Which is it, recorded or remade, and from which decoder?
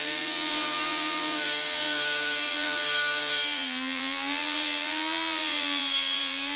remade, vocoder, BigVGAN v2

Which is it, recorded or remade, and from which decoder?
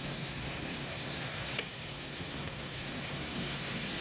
remade, codec, SNAC